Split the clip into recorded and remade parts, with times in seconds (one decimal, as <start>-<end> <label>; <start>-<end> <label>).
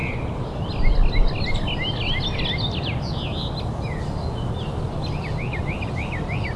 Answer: 0.0-6.6 recorded